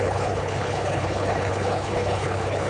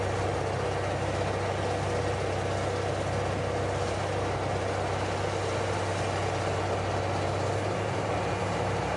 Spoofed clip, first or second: first